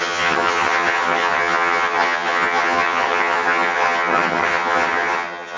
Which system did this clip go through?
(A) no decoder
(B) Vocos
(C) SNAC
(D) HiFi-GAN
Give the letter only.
D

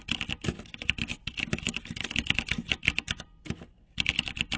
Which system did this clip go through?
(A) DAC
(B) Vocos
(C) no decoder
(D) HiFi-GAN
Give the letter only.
C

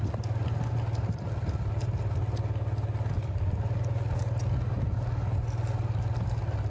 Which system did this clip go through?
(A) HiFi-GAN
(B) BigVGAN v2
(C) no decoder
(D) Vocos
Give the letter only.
C